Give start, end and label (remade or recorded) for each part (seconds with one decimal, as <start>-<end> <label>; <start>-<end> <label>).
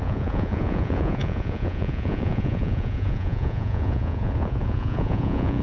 0.0-5.6 remade